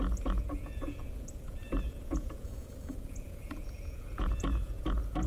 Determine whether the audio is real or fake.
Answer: fake